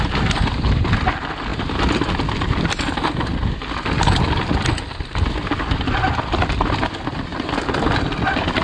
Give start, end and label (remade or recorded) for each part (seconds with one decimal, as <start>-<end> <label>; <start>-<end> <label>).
0.0-8.6 recorded